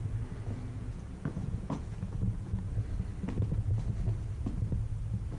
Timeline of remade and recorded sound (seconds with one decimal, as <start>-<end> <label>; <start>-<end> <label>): 0.0-0.6 recorded; 0.6-2.7 remade; 2.7-5.4 recorded